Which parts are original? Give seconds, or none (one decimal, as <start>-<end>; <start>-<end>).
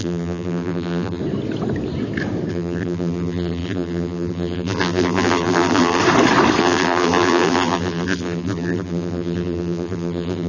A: 1.2-2.5; 6.0-6.6